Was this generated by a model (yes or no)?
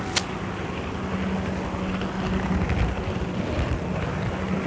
no